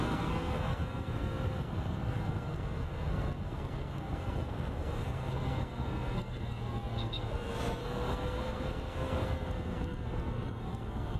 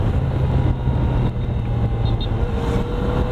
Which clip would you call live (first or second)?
second